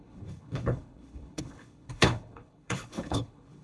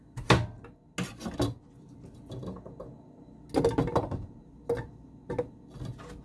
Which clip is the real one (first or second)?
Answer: second